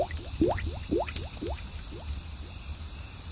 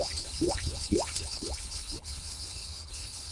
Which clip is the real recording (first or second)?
first